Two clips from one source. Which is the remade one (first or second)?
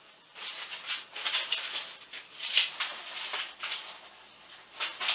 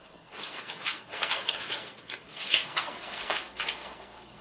second